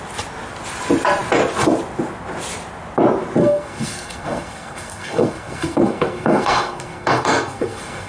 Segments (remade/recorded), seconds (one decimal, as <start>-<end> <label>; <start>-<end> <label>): 0.0-3.4 recorded; 3.4-8.1 remade